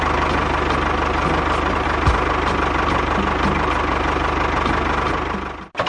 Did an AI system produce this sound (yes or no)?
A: no